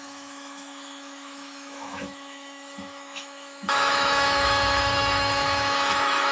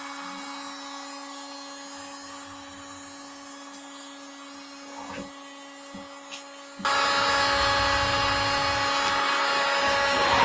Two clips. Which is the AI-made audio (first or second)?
first